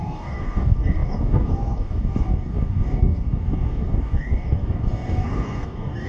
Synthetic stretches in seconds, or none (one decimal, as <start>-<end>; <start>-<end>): 0.0-6.1